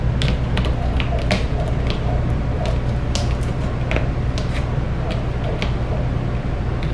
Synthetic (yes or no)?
no